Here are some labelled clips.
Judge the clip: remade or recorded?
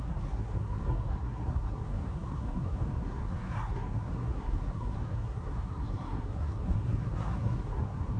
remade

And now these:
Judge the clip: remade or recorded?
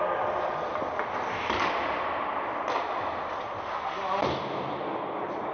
recorded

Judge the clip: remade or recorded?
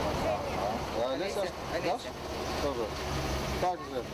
recorded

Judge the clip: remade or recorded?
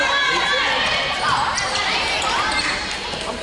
remade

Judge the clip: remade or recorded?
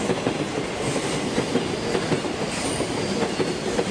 recorded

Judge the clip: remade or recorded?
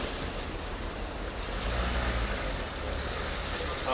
recorded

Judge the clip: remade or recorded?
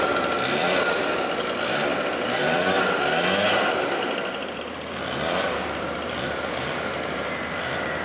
remade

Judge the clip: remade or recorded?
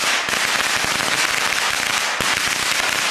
recorded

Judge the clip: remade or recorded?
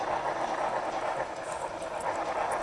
recorded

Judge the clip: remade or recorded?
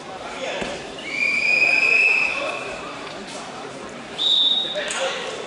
remade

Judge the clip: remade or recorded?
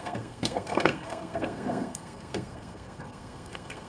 remade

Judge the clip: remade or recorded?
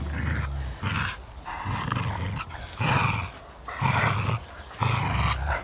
recorded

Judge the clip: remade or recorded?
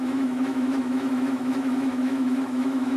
remade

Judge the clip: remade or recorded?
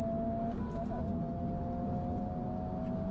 recorded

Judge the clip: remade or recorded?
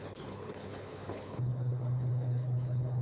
remade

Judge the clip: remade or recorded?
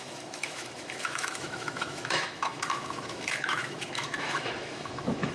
remade